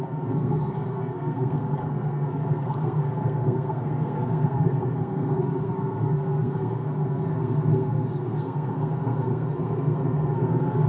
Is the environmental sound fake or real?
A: fake